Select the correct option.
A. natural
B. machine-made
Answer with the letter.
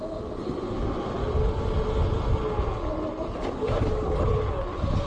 A